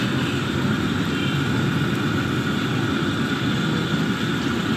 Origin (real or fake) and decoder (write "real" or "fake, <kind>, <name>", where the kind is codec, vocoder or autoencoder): real